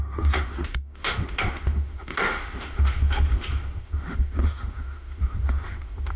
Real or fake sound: fake